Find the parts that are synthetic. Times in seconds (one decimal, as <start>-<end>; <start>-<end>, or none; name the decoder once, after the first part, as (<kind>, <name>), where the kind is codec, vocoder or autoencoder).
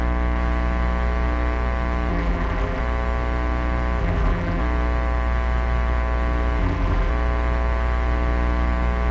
2.1-2.8 (vocoder, BigVGAN v2); 4.0-4.6; 6.6-7.1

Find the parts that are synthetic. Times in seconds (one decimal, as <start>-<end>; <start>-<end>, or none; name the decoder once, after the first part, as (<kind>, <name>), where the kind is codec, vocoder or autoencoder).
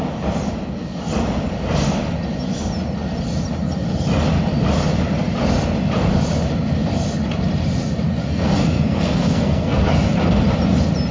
8.2-9.8 (codec, SNAC)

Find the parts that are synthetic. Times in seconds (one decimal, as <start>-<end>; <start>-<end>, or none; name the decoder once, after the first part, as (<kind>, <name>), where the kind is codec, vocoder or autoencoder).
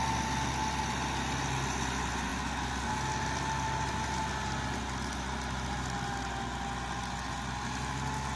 none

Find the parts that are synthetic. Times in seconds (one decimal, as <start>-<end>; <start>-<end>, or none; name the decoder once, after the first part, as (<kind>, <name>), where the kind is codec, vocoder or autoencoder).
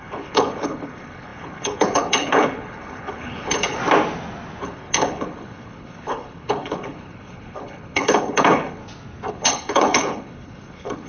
0.0-3.8 (codec, HILCodec); 4.6-8.8; 9.3-11.1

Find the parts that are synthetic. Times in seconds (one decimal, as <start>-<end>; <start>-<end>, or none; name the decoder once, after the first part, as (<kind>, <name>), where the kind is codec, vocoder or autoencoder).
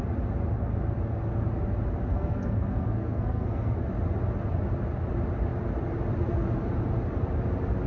2.1-3.9 (codec, SNAC)